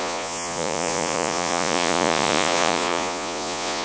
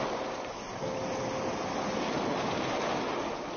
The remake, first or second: first